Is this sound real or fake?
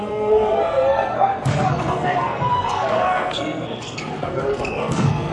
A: fake